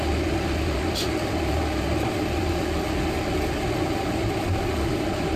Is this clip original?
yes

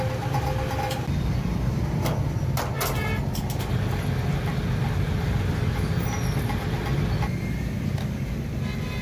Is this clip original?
yes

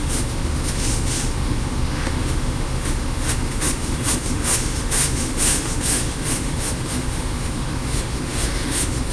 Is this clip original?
no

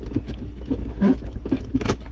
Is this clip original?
no